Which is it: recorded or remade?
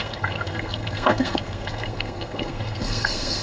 remade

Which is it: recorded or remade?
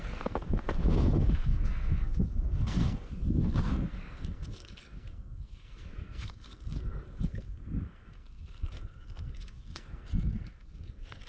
remade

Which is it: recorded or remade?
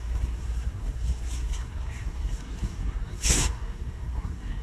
remade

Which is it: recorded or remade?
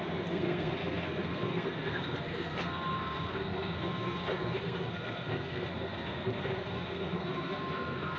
remade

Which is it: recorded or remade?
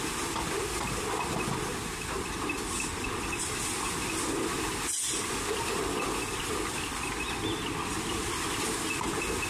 recorded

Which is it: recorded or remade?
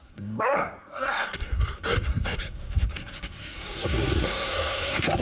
remade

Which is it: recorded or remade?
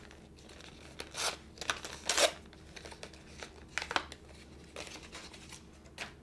recorded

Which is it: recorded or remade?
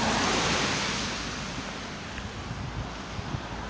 recorded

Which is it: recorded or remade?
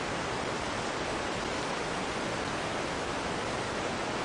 recorded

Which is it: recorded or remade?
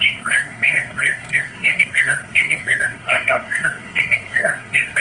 remade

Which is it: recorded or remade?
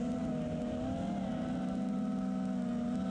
recorded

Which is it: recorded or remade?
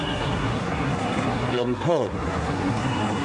remade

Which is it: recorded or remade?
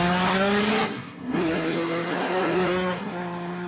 remade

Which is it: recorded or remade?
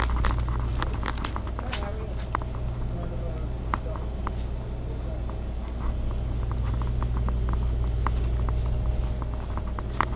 recorded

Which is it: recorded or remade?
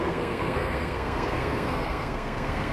remade